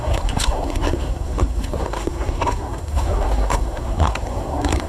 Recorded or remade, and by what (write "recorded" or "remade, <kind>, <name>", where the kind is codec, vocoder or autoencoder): remade, codec, SNAC